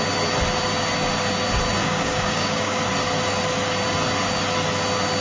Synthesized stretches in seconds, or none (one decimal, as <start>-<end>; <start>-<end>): 1.8-2.8